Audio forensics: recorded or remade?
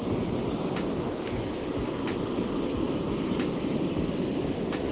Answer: recorded